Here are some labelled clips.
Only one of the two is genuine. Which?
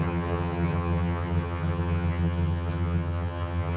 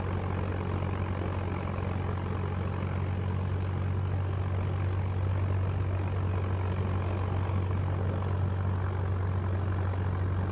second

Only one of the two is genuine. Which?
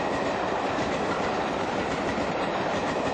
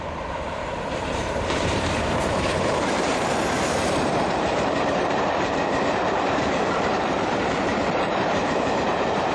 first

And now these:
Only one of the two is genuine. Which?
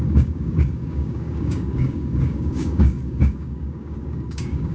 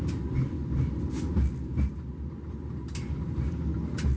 second